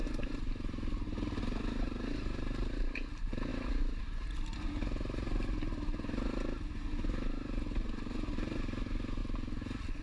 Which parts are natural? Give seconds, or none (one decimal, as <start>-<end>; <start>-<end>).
0.0-3.5; 4.0-10.0